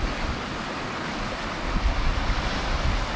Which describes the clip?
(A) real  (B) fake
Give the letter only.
A